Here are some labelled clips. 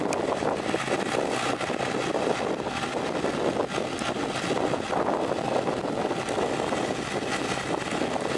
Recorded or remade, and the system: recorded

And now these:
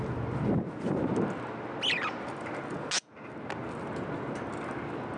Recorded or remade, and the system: recorded